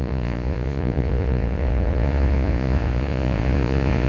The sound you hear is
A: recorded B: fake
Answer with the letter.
B